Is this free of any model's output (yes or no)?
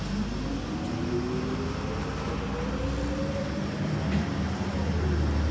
yes